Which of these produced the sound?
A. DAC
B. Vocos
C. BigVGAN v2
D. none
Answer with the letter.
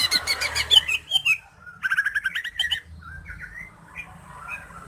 C